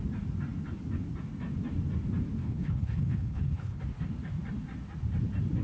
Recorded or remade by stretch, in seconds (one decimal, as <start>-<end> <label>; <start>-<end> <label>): 0.0-2.4 recorded; 2.4-3.8 remade; 3.8-5.6 recorded